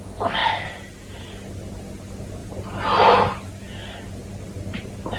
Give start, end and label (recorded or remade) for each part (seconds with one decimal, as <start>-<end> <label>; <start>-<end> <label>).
0.0-5.2 recorded